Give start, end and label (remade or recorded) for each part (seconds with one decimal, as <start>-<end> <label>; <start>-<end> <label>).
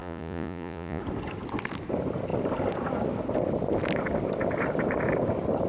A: 0.0-1.0 remade; 1.0-5.7 recorded